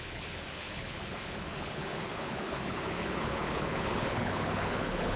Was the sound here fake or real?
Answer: fake